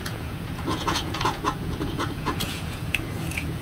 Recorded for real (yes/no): no